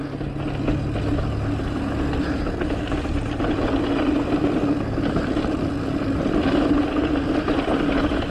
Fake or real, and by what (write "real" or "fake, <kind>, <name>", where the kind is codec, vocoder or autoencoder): real